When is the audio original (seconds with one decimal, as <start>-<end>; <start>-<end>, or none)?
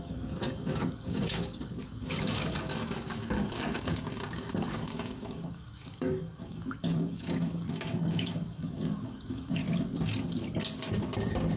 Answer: 9.6-11.6